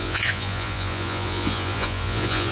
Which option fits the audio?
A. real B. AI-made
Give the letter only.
B